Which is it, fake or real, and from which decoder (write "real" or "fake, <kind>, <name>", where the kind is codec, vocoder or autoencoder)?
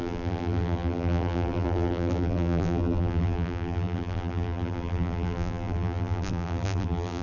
fake, vocoder, BigVGAN v2